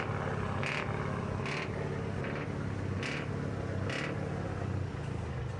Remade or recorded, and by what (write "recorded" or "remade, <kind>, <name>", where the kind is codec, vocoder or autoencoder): recorded